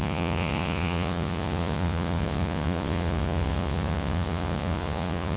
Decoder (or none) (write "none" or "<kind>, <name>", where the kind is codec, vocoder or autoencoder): vocoder, Vocos